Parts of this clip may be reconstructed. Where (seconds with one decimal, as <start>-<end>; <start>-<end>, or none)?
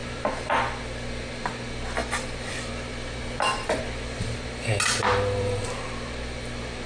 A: 2.0-3.8